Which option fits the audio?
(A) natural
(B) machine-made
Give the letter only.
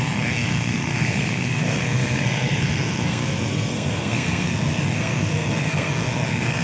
B